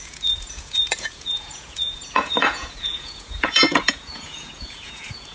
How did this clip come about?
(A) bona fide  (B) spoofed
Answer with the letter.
B